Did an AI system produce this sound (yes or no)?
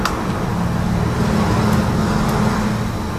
no